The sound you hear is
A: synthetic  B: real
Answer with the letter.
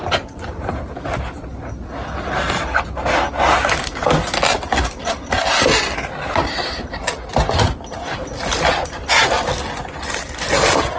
B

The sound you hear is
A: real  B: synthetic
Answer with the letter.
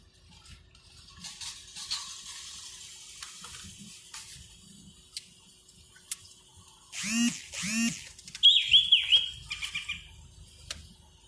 A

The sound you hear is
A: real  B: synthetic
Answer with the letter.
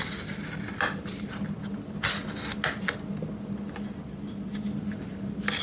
A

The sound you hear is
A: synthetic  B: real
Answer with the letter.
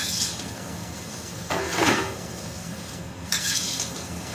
A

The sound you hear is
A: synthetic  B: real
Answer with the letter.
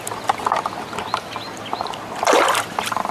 B